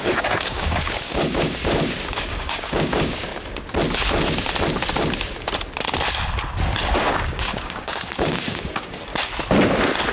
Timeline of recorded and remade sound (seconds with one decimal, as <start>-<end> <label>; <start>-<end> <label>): 0.0-3.3 remade; 3.3-7.0 recorded; 7.0-9.1 remade; 9.1-10.1 recorded